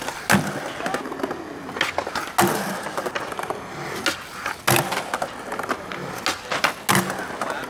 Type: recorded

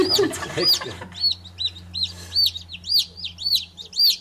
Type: recorded